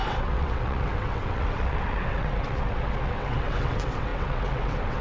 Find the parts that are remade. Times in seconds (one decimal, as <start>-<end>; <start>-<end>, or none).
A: 0.0-5.0